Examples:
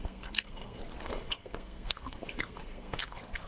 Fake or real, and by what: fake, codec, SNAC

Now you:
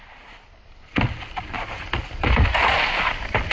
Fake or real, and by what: real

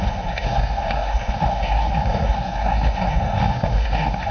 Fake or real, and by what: fake, codec, SNAC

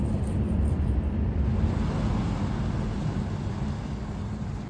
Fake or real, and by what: real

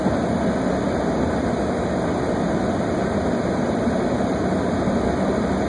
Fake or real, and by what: real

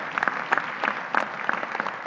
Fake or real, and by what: real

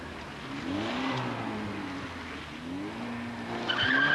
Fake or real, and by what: real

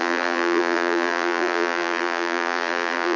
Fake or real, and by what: fake, vocoder, BigVGAN v2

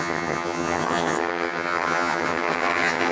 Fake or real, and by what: fake, vocoder, HiFi-GAN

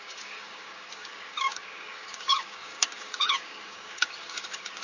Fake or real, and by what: fake, codec, DAC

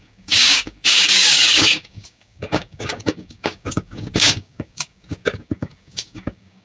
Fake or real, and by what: fake, codec, DAC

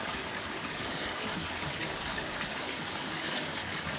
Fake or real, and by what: fake, codec, DAC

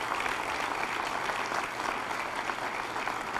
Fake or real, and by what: real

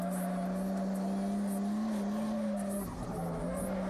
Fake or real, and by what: real